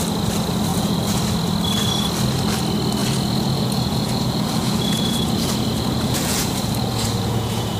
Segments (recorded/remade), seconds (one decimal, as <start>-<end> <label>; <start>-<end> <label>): 0.0-0.7 recorded; 0.7-1.2 remade; 1.2-3.0 recorded; 3.0-7.8 remade